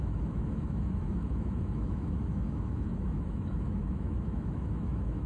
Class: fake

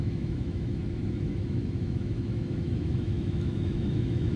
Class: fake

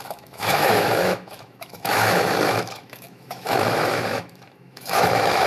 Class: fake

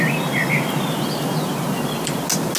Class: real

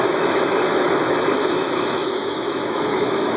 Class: fake